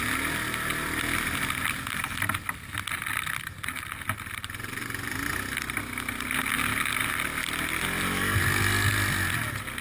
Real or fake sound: real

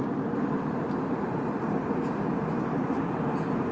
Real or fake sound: fake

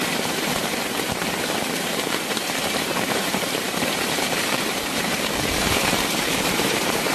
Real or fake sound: fake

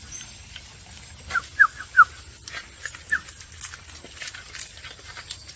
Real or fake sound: real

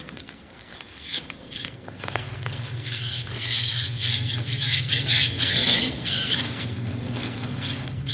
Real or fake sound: fake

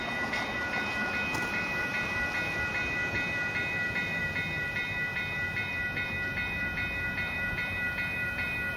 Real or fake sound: fake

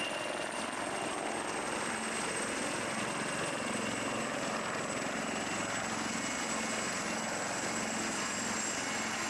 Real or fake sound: real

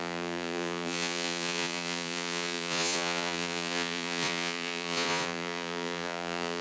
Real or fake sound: fake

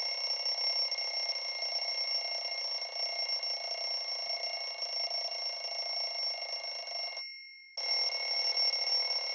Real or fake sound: real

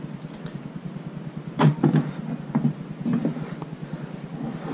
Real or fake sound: real